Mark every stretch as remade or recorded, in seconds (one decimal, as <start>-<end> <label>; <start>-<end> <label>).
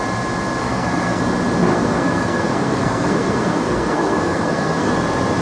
0.0-0.6 recorded; 0.6-1.2 remade; 1.2-1.7 recorded; 1.7-4.9 remade; 4.9-5.4 recorded